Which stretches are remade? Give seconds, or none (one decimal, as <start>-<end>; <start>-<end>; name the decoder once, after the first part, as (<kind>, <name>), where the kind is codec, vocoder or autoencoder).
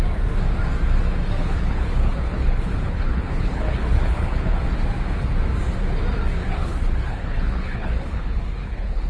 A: 1.4-4.6 (codec, HILCodec); 6.4-9.1